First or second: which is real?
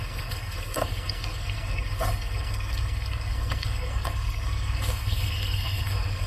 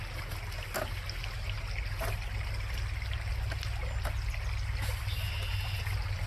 second